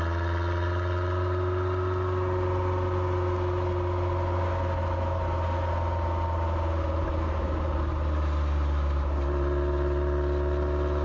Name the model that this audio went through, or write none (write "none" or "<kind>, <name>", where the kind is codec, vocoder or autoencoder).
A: none